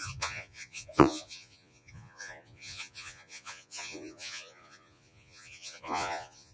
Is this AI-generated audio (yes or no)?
yes